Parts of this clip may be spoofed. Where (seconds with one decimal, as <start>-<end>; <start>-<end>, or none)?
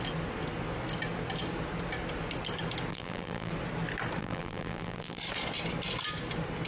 2.9-3.5; 4.2-5.2